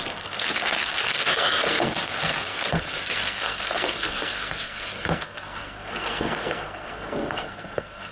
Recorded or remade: remade